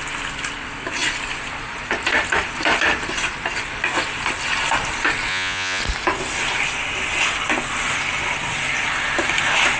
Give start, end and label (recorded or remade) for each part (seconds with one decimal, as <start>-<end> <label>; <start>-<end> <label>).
0.0-5.3 recorded; 5.3-5.8 remade; 5.8-9.8 recorded